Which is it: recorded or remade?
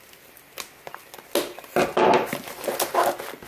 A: recorded